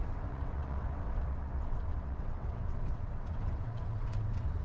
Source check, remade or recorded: remade